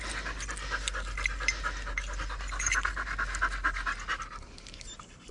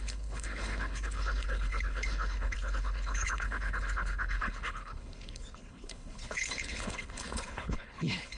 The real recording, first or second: first